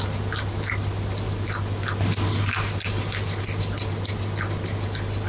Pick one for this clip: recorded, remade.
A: recorded